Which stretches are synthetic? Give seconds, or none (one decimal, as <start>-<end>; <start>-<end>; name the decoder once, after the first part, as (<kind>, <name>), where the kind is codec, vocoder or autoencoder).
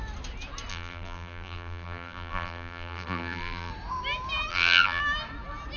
0.7-3.7 (vocoder, BigVGAN v2); 4.5-5.0